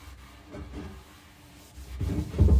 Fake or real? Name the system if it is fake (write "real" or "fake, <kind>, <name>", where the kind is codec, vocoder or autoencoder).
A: real